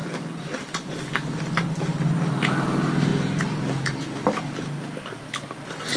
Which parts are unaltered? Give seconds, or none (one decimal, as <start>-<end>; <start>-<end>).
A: 0.0-6.0